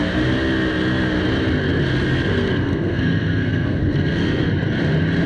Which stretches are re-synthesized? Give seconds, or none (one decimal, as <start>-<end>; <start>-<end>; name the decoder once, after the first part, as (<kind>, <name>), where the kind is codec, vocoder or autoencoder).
2.3-4.5 (codec, SNAC)